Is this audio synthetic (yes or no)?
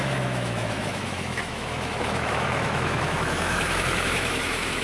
yes